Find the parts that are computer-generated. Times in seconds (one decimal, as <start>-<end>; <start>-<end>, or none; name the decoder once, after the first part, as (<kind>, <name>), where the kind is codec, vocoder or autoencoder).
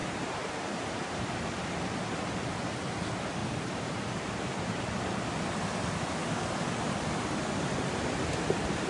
0.0-1.2 (vocoder, BigVGAN v2); 3.4-5.2